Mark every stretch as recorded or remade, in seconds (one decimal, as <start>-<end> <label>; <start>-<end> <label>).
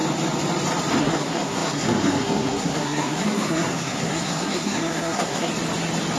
0.0-1.0 recorded; 1.0-5.5 remade; 5.5-6.2 recorded